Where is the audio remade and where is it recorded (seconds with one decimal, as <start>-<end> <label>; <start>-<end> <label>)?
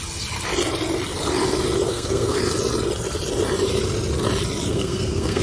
0.0-1.9 recorded; 1.9-2.4 remade; 2.4-4.7 recorded; 4.7-5.4 remade